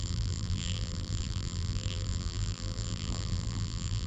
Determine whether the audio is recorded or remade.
remade